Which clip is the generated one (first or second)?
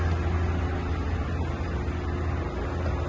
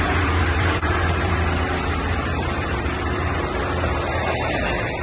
second